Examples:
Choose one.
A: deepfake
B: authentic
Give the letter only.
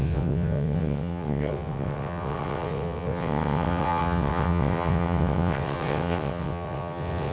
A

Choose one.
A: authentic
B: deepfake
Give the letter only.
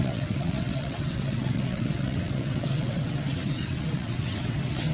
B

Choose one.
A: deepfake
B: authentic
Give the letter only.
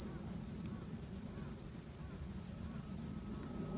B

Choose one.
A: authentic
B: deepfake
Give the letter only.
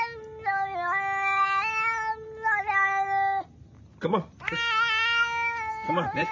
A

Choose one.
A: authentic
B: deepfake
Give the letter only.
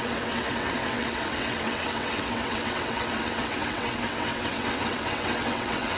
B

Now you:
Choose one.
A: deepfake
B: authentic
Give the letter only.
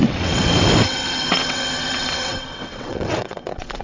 A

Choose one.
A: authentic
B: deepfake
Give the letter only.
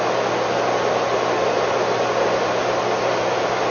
A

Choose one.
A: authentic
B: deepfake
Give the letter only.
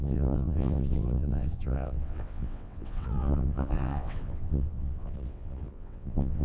B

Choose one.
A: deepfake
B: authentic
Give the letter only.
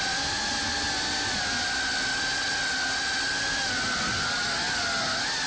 B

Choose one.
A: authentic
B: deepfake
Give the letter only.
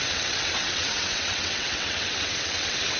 B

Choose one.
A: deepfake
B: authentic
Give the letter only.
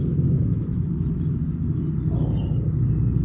B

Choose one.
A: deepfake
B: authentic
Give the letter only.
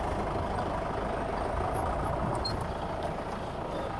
B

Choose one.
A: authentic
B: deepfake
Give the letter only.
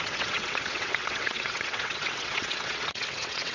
B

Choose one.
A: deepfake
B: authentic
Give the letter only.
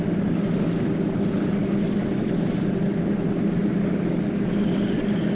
B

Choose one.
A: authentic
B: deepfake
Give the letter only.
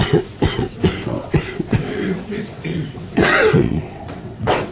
B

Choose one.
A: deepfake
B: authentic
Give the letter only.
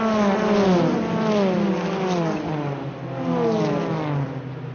B